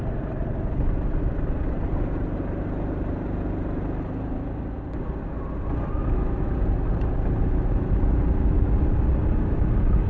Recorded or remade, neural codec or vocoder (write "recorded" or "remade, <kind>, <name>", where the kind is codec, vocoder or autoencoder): recorded